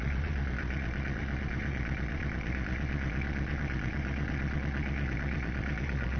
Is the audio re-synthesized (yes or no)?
yes